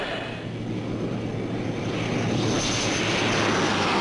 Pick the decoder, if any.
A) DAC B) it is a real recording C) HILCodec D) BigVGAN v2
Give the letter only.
B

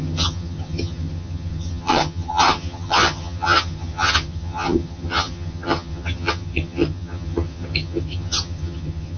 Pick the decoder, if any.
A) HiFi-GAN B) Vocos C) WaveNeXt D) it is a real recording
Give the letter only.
A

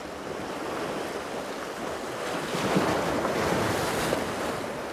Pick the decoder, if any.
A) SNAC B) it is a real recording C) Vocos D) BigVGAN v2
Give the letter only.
B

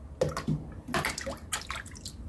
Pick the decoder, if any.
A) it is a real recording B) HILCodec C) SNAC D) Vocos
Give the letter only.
A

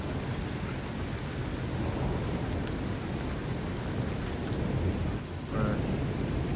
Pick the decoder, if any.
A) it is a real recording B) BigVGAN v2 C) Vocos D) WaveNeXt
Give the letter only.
A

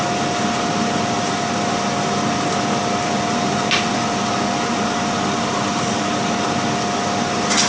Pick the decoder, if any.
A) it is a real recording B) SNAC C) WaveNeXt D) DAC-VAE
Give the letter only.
A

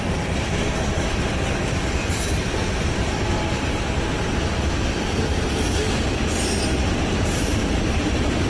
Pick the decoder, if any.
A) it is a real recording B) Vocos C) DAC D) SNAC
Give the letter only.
A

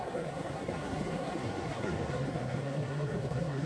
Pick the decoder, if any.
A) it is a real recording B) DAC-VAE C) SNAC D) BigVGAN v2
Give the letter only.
C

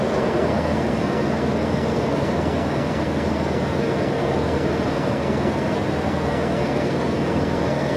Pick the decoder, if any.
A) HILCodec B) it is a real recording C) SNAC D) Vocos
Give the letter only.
C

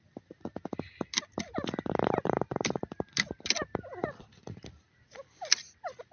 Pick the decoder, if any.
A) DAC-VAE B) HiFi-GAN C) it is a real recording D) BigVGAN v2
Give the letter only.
D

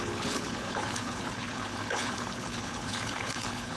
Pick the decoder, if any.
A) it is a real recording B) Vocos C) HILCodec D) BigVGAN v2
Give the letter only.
C